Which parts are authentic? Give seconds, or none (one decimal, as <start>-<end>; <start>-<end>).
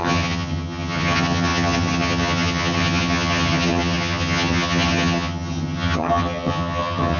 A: none